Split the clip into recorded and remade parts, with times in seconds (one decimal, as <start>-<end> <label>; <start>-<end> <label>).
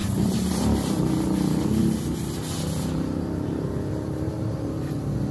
0.0-5.3 recorded